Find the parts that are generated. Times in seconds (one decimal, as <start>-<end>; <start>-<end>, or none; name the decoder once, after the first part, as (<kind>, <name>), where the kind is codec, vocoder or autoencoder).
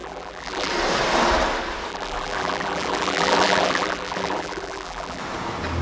0.0-0.7 (vocoder, BigVGAN v2); 1.9-5.2